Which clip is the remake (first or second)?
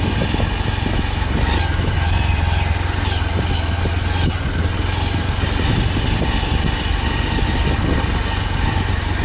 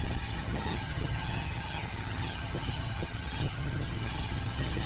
second